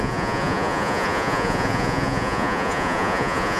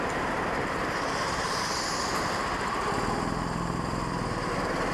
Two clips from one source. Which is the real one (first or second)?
second